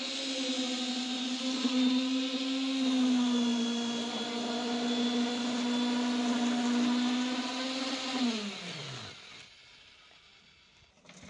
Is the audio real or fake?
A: real